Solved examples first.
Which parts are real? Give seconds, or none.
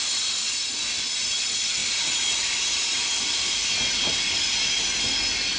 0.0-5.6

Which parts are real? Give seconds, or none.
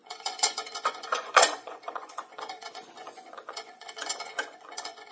none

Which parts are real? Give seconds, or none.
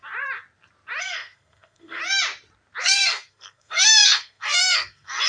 0.0-1.0; 2.0-2.8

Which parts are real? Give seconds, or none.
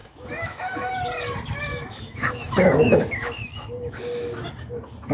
0.9-1.7; 3.7-5.1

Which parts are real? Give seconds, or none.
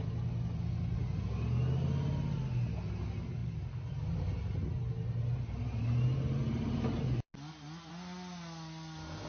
0.0-9.3